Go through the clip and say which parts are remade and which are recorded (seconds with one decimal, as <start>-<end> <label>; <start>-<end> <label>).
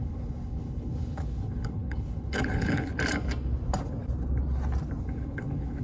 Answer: 0.0-2.9 remade; 2.9-5.0 recorded; 5.0-5.8 remade